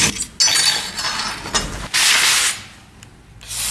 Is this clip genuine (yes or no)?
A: yes